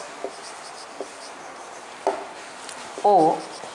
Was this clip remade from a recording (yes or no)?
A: no